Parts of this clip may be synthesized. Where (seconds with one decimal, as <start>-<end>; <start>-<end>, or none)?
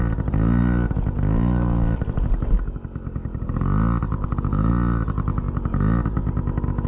none